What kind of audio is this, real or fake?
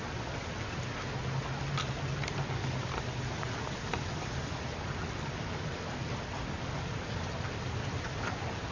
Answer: real